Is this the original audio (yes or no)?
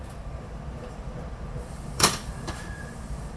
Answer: no